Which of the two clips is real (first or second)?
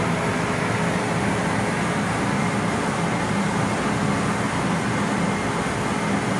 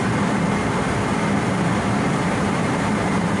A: first